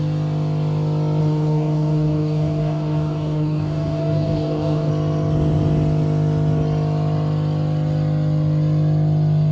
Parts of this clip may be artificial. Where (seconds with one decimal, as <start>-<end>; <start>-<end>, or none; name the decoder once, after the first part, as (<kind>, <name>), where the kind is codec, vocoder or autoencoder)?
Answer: 1.2-4.9 (codec, DAC)